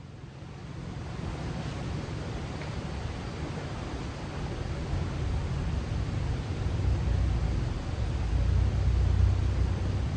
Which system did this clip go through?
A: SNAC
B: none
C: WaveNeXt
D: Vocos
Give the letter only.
B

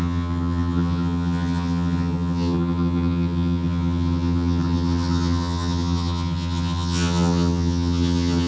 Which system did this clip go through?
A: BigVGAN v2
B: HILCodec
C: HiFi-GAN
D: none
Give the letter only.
C